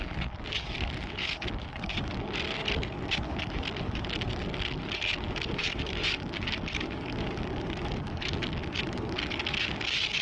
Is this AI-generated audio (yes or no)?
yes